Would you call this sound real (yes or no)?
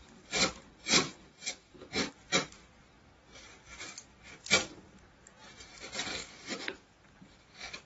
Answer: yes